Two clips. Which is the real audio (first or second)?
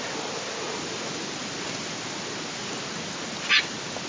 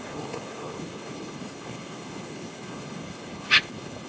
first